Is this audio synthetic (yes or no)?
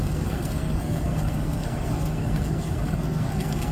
yes